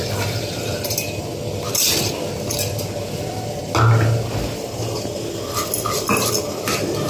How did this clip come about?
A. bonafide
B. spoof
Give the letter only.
A